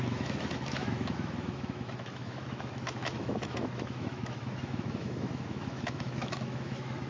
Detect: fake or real fake